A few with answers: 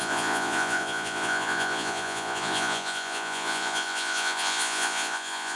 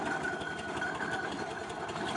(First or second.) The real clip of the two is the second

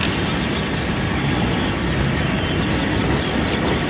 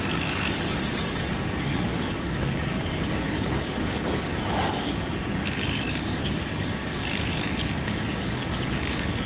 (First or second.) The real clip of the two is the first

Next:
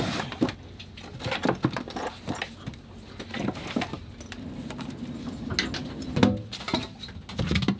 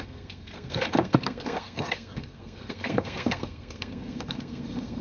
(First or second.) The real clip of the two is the first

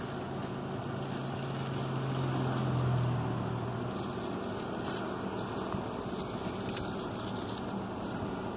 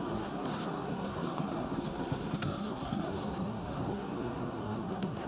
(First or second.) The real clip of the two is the first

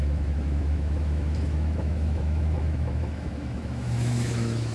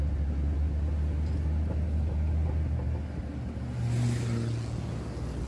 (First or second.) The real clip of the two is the second